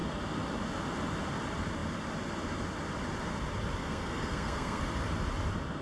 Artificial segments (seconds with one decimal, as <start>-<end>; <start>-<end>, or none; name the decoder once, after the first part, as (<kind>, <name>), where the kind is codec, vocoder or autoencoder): 3.8-4.8 (codec, SNAC)